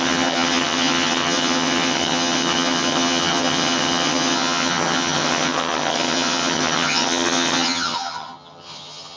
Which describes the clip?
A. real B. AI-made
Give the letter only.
B